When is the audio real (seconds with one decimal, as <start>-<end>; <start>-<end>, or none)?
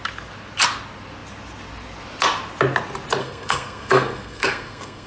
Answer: 0.0-3.2